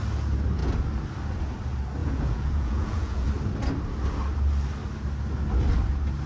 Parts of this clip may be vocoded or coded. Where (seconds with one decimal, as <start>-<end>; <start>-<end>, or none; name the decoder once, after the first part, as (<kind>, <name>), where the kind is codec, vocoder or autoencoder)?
2.0-3.3 (vocoder, Vocos)